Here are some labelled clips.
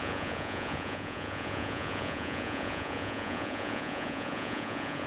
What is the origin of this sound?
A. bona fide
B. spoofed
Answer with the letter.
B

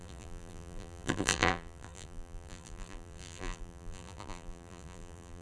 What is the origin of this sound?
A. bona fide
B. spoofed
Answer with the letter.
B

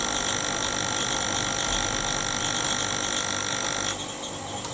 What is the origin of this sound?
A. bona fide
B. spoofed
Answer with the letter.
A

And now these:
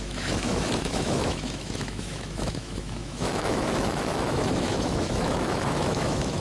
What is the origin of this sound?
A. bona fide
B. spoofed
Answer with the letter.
B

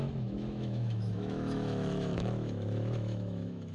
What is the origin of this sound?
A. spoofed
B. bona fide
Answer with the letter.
A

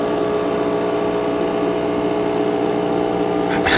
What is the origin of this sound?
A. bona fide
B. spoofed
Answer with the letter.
A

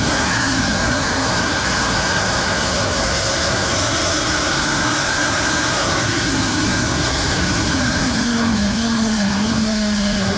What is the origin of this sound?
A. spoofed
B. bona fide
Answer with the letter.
A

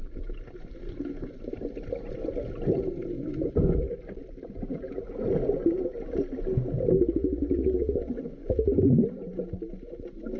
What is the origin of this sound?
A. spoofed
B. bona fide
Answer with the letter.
B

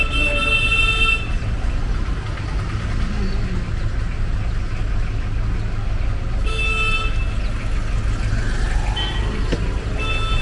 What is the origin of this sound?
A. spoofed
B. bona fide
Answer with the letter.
B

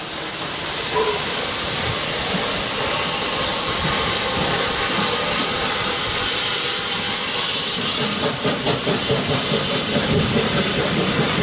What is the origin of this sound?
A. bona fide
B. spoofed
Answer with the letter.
B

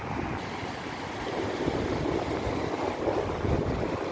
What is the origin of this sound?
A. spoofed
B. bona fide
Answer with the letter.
B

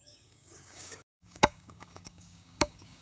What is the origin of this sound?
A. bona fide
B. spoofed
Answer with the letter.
B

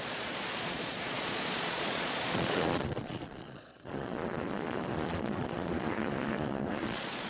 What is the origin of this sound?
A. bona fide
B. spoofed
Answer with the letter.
B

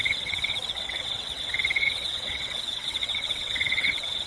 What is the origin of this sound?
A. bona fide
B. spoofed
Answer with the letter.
B